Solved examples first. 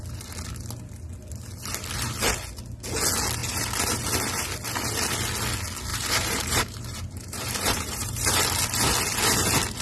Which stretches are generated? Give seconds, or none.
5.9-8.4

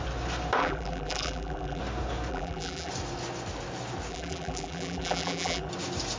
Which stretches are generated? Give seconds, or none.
0.6-1.8; 2.3-2.9; 4.1-5.7

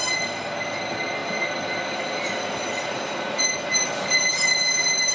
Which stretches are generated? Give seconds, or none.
none

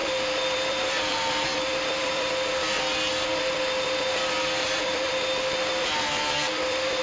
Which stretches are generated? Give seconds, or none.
0.0-2.3; 4.6-5.1; 5.8-7.0

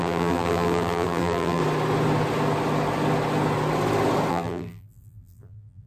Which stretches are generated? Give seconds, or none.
0.0-1.6; 4.3-5.9